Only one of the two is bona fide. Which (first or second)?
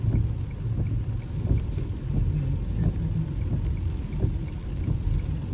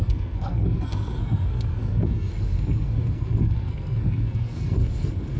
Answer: first